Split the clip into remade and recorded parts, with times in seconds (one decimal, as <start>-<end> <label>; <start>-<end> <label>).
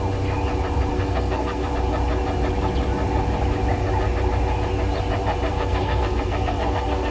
0.0-0.9 recorded; 0.9-1.7 remade; 1.7-5.5 recorded; 5.5-7.1 remade